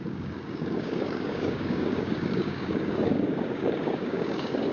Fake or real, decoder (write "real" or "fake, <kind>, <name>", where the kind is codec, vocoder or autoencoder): fake, codec, DAC